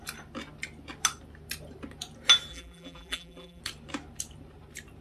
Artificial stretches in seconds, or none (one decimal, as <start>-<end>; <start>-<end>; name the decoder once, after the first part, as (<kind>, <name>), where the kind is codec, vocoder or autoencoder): 2.5-3.6 (vocoder, BigVGAN v2)